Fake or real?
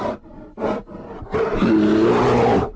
real